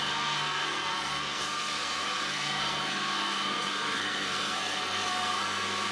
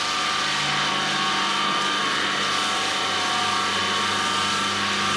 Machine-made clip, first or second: first